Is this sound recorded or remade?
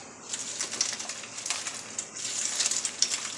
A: recorded